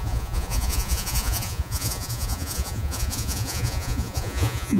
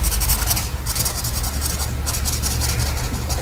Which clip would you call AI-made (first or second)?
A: first